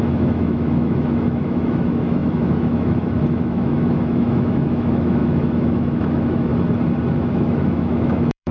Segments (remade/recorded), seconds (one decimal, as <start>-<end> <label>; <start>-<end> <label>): 0.0-6.5 remade; 6.5-7.1 recorded; 7.1-8.5 remade